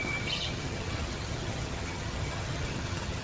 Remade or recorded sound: remade